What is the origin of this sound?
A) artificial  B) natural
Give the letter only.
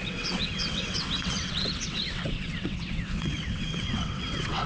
A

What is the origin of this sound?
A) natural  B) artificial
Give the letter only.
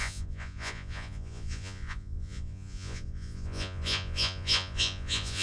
B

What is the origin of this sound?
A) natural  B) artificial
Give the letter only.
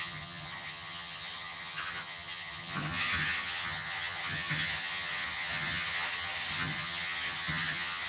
B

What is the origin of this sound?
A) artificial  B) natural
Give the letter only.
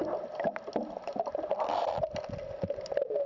B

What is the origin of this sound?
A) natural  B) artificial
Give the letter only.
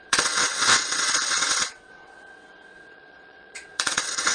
B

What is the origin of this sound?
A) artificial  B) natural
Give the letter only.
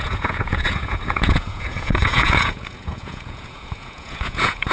A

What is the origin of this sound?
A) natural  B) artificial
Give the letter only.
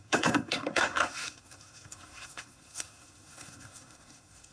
B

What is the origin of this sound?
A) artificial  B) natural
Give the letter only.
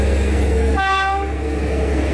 A